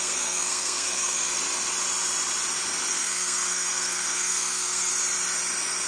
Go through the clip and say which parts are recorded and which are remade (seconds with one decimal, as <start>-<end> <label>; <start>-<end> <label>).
0.0-1.3 remade; 1.3-2.9 recorded; 2.9-4.9 remade; 4.9-5.9 recorded